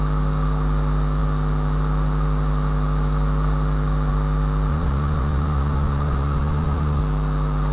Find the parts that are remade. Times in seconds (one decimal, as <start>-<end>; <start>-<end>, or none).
4.7-7.0